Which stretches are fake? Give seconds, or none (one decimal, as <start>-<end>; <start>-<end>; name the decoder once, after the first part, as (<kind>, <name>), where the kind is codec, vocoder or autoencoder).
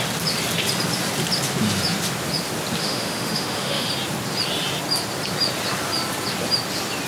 2.8-3.9 (autoencoder, DAC-VAE)